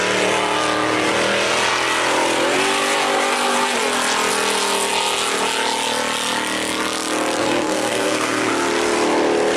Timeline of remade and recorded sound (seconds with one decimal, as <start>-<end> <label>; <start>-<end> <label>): 0.0-7.4 recorded; 7.4-8.5 remade; 8.5-9.6 recorded